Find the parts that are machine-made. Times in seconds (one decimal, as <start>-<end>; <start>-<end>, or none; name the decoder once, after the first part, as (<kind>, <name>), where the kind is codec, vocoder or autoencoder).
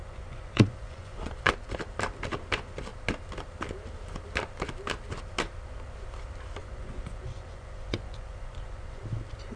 0.0-1.5 (vocoder, Vocos); 6.6-9.0